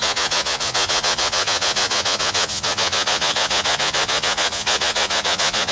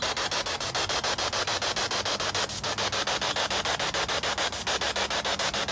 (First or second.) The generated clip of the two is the first